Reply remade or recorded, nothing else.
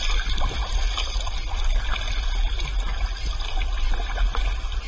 recorded